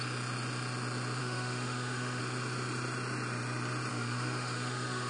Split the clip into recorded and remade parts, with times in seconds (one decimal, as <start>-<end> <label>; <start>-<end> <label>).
0.0-1.2 recorded; 1.2-2.2 remade; 2.2-3.9 recorded; 3.9-5.1 remade